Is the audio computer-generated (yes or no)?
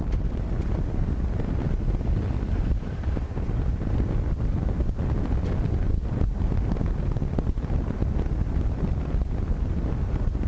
no